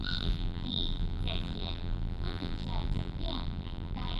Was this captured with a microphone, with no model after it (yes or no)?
no